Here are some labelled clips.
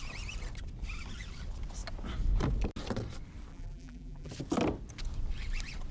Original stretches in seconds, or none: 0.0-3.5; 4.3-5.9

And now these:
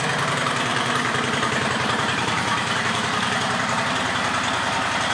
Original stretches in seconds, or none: 0.0-0.7; 3.8-5.1

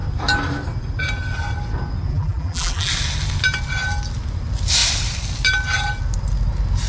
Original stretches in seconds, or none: 0.0-2.1; 2.9-6.9

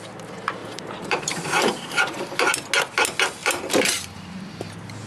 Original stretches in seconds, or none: 0.0-0.6; 2.2-3.4; 4.4-5.1